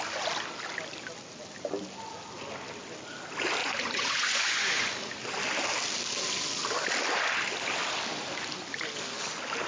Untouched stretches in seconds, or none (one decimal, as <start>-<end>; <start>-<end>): 0.0-3.6; 4.9-9.7